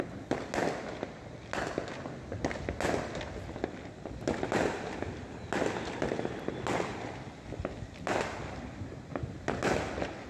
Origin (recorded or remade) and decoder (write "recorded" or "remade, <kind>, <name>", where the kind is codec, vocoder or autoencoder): recorded